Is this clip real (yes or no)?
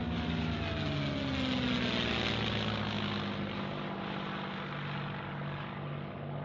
yes